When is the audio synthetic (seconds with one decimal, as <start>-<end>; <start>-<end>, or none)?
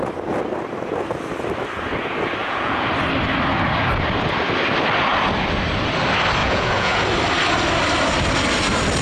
2.4-2.9; 6.4-7.0